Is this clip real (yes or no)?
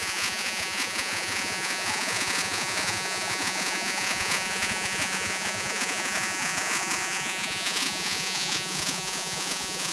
no